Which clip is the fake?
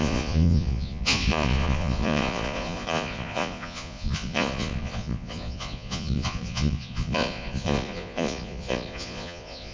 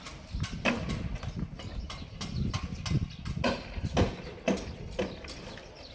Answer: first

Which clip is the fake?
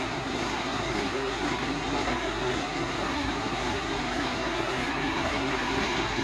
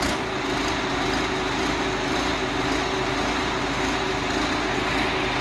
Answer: first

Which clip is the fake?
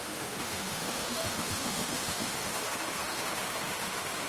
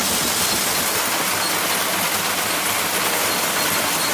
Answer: first